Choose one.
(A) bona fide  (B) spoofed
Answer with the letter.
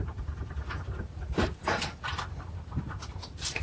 A